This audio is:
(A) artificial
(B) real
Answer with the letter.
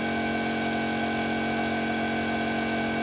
B